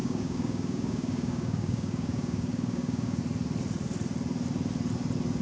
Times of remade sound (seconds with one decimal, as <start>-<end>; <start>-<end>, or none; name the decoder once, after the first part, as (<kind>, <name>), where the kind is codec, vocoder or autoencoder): 0.0-3.2 (codec, DAC)